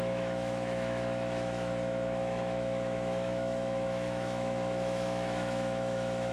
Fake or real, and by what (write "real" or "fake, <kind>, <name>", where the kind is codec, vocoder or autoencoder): fake, autoencoder, DAC-VAE